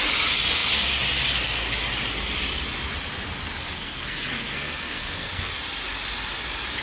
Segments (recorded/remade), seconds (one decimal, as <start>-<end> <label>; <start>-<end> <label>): 0.0-3.6 recorded; 3.6-5.5 remade; 5.5-6.8 recorded